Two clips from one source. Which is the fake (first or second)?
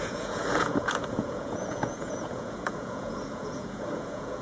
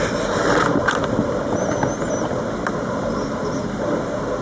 first